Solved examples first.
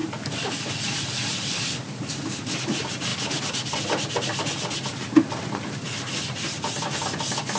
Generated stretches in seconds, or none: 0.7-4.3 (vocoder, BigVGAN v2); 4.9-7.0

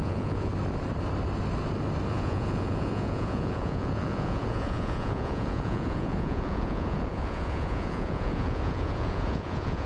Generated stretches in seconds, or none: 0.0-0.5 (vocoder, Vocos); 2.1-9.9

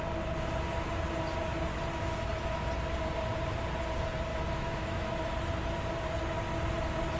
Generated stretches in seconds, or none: 4.3-5.2 (autoencoder, DAC-VAE)

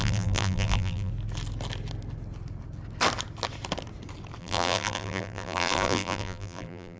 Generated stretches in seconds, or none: 0.0-1.1 (vocoder, BigVGAN v2); 4.4-7.0

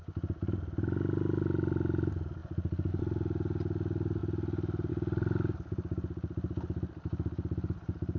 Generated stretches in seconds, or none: none

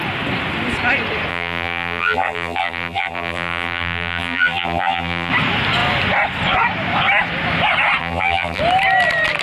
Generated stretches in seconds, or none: 1.3-5.3 (vocoder, BigVGAN v2); 8.0-8.6

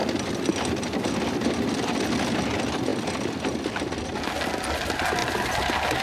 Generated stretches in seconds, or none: none